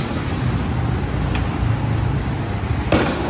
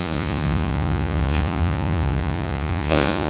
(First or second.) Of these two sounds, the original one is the first